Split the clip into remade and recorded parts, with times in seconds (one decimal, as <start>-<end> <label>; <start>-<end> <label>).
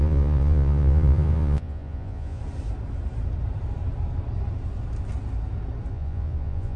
0.0-2.4 remade; 2.4-5.9 recorded; 5.9-6.8 remade